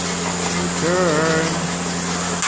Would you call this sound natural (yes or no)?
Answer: yes